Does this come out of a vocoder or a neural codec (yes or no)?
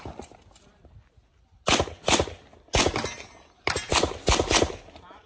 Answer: no